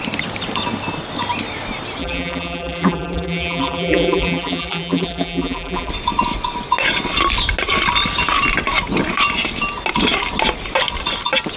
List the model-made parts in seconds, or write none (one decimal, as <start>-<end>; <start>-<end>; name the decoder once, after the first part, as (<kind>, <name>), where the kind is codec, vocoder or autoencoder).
2.0-5.9 (vocoder, BigVGAN v2)